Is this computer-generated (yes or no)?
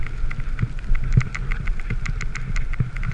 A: no